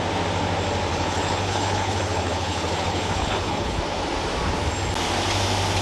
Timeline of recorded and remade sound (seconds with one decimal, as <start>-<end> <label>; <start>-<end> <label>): 0.0-0.9 recorded; 0.9-3.8 remade; 3.8-5.8 recorded